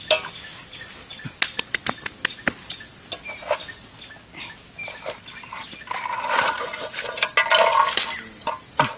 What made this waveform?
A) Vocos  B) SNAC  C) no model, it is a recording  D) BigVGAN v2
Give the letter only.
C